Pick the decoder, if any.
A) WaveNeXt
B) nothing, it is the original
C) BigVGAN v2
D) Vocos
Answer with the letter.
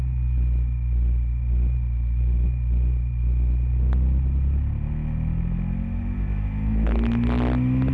B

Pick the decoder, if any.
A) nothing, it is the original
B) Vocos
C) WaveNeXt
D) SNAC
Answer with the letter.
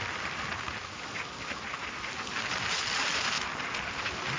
A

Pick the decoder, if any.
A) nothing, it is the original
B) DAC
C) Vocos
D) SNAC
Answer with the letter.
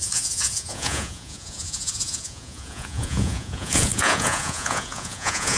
C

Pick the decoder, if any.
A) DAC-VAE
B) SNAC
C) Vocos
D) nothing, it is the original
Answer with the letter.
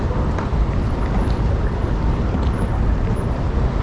D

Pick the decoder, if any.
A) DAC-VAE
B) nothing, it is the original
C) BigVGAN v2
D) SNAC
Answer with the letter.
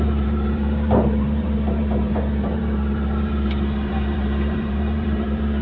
C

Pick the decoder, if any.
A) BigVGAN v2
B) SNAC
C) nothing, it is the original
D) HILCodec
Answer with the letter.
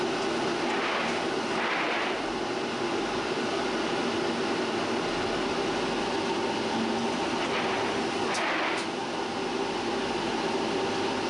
C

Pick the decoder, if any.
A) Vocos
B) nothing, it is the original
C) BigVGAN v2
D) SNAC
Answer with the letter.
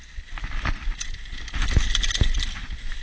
B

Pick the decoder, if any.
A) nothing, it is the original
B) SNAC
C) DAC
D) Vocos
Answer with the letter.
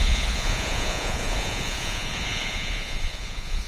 D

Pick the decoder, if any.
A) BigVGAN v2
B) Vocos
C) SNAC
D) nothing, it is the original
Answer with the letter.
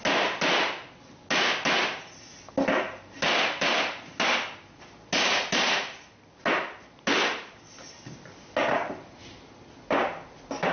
D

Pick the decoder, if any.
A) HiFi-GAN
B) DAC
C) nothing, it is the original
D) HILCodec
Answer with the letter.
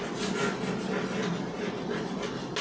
C